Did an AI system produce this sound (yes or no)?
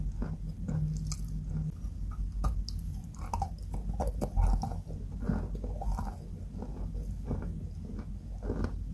no